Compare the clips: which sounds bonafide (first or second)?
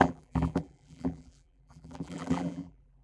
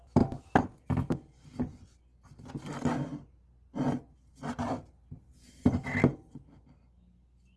second